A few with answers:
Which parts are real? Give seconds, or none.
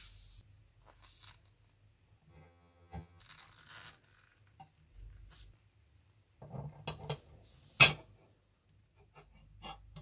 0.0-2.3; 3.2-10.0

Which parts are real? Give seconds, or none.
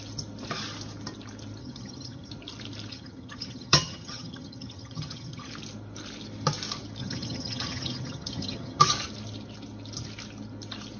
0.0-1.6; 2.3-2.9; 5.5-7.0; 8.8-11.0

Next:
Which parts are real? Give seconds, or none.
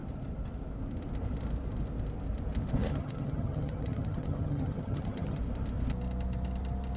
0.0-2.8; 5.4-7.0